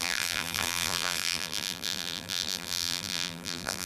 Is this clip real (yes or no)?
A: no